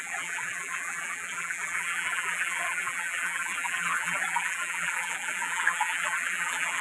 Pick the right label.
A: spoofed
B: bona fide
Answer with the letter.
A